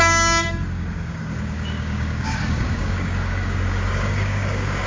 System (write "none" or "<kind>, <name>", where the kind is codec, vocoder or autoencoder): codec, DAC